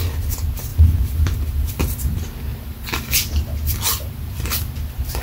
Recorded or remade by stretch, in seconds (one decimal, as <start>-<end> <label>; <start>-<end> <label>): 0.0-0.7 recorded; 0.7-1.2 remade; 1.2-5.2 recorded